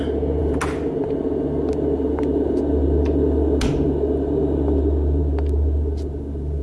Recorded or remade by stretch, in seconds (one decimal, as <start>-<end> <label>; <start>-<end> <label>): 0.0-6.6 recorded